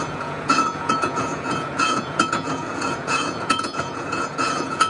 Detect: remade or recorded remade